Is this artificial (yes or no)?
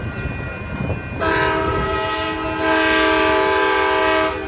no